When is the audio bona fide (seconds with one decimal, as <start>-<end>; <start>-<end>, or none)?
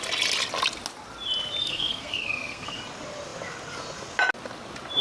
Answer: 0.0-1.6; 2.8-5.0